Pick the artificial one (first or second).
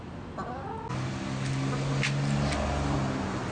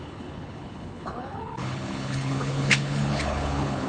second